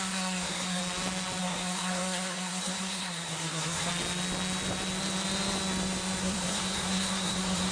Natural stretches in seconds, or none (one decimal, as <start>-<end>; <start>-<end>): 0.8-1.4; 3.9-6.2